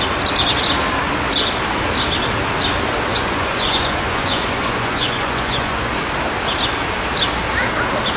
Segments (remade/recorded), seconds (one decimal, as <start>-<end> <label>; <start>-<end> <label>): 0.0-3.1 recorded; 3.1-5.9 remade; 5.9-8.2 recorded